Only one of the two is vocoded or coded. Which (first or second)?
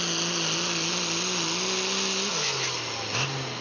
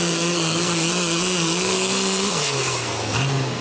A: second